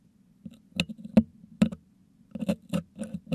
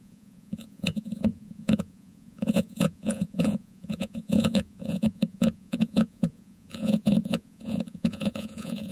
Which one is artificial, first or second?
second